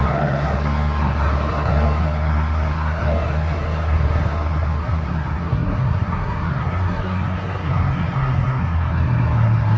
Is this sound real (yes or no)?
no